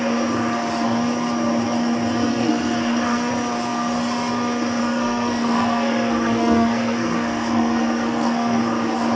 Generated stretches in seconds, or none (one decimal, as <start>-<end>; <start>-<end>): 2.3-3.3; 4.8-8.6